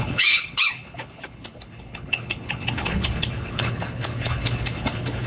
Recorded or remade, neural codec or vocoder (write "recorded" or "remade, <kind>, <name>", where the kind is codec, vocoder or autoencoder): remade, codec, HILCodec